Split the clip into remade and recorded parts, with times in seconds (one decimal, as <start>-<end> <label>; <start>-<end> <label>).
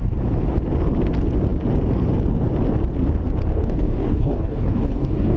0.0-3.5 recorded; 3.5-5.4 remade